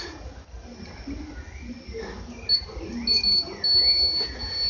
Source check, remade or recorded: recorded